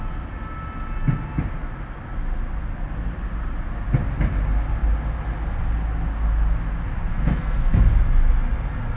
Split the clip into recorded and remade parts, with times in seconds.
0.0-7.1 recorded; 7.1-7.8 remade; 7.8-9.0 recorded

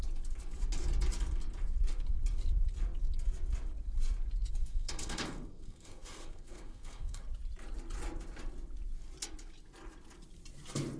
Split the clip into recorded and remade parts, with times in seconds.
0.0-4.6 recorded; 4.6-7.2 remade; 7.2-11.0 recorded